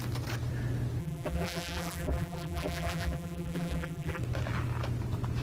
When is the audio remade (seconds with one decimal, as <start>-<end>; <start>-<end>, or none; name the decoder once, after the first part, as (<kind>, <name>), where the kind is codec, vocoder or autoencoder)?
1.0-4.2 (vocoder, BigVGAN v2)